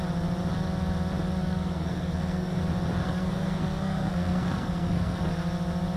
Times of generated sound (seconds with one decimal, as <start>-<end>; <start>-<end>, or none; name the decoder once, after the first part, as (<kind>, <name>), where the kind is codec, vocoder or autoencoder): 1.4-2.6 (codec, SNAC); 3.0-5.2